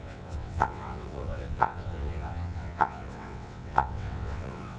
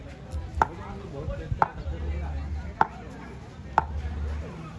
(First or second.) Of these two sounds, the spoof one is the first